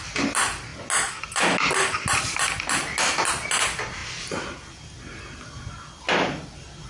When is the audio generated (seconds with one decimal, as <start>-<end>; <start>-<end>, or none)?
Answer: none